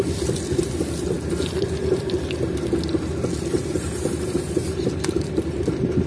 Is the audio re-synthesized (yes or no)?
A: no